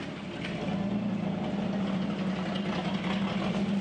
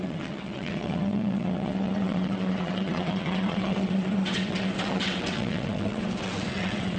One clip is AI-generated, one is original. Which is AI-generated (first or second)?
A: second